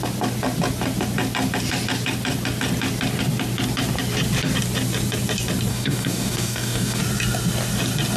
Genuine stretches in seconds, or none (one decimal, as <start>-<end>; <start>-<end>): 0.0-5.7; 7.0-8.2